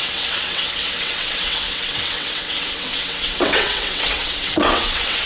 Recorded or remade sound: remade